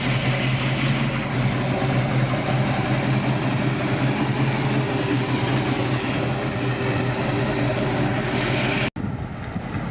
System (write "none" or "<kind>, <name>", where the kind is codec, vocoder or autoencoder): none